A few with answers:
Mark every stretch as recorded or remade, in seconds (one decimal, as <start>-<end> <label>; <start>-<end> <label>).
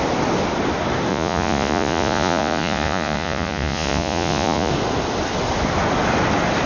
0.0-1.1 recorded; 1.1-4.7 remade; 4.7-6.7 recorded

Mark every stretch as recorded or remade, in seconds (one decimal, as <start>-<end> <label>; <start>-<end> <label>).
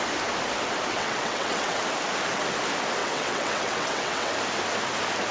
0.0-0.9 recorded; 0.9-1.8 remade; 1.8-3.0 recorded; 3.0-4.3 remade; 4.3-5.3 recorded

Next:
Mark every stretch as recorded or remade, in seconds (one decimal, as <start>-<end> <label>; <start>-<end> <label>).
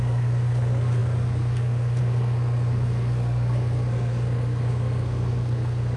0.0-6.0 remade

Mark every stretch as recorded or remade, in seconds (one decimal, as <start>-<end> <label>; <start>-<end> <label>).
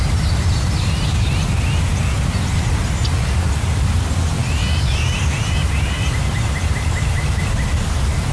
0.0-8.3 recorded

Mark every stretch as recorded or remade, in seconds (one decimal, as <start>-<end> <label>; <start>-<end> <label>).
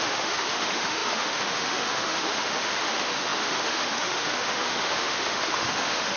0.0-6.2 remade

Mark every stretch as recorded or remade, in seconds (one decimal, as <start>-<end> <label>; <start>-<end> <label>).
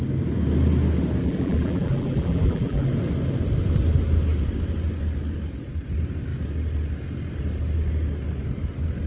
0.0-1.2 recorded; 1.2-2.9 remade; 2.9-9.1 recorded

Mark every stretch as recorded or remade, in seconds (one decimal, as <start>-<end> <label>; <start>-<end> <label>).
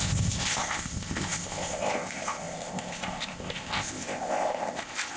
0.0-5.2 remade